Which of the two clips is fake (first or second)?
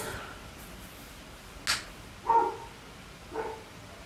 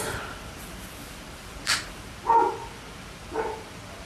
second